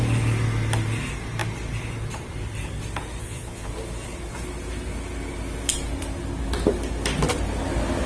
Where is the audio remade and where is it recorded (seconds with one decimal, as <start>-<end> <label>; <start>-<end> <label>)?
0.0-3.2 recorded; 3.2-3.7 remade; 3.7-8.1 recorded